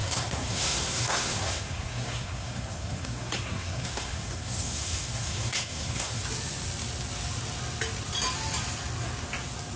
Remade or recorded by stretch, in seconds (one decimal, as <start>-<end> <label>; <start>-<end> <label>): 0.0-6.2 remade; 6.2-9.8 recorded